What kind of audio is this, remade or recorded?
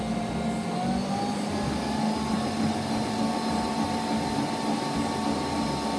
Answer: recorded